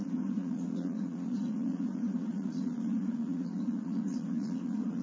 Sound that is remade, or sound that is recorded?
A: remade